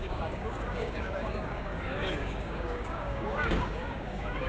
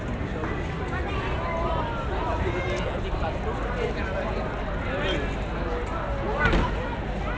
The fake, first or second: first